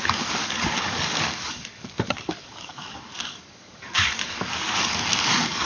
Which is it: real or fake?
fake